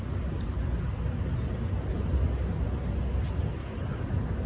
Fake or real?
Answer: real